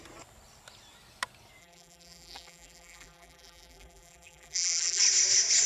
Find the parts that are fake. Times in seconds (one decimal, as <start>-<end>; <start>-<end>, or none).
1.6-5.0